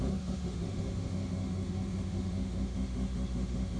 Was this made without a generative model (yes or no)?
no